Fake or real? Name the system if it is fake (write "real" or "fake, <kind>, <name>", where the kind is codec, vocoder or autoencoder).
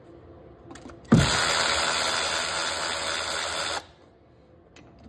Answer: real